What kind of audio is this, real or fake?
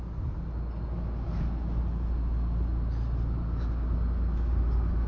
real